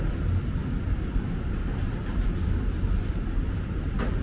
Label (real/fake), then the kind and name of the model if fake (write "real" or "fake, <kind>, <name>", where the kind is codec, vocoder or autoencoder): real